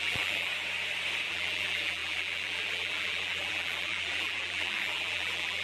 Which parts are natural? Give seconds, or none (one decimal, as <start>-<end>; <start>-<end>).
0.5-1.3